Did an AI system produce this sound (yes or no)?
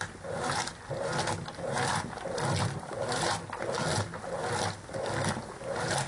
no